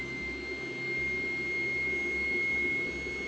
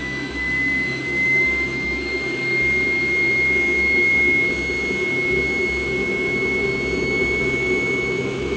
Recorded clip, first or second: first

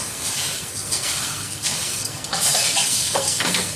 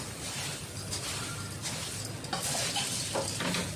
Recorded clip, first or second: second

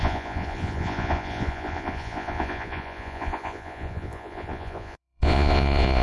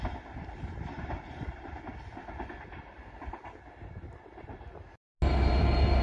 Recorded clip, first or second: second